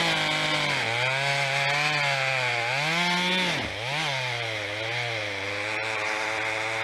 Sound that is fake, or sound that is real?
real